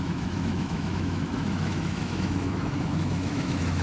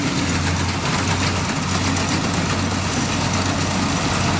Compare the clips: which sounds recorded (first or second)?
second